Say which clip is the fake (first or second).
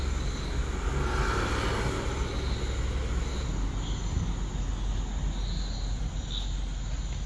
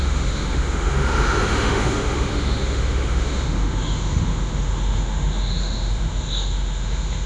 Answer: second